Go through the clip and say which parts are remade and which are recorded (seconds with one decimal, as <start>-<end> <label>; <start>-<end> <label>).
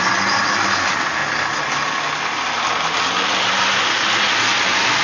0.0-5.0 recorded